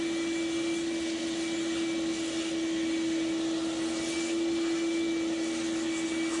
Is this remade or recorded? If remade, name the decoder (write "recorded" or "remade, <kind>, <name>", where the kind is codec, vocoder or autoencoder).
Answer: recorded